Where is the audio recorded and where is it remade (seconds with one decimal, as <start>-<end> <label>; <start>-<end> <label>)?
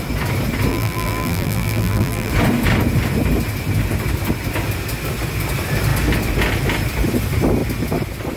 0.0-0.7 recorded; 0.7-2.3 remade; 2.3-8.4 recorded